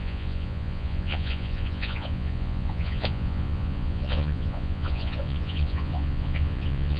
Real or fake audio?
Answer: fake